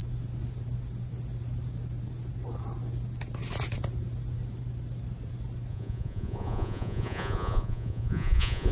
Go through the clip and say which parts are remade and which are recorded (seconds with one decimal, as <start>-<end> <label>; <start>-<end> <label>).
0.0-5.7 recorded; 5.7-8.7 remade